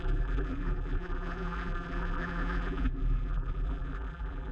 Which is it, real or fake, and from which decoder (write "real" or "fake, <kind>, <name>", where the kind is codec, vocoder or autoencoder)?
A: fake, vocoder, BigVGAN v2